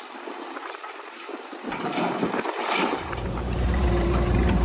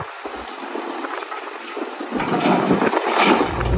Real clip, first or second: second